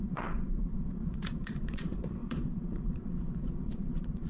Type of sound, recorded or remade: remade